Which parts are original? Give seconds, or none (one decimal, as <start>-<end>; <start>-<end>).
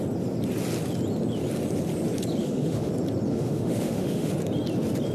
0.0-2.4; 2.9-3.3; 4.3-5.1